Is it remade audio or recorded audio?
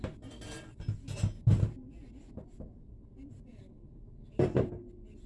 recorded